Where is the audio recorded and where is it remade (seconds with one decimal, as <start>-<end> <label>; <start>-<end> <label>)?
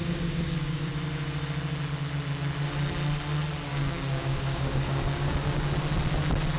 0.0-0.9 remade; 0.9-3.7 recorded; 3.7-5.7 remade; 5.7-6.6 recorded